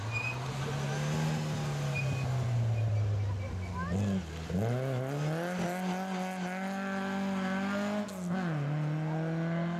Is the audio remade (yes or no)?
no